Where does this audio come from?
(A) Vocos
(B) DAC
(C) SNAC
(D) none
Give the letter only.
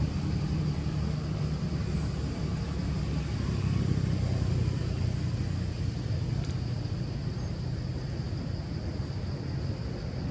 D